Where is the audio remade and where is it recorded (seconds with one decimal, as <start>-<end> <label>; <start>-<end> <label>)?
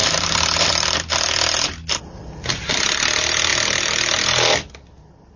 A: 0.0-0.7 remade; 0.7-2.0 recorded; 2.0-2.6 remade; 2.6-5.4 recorded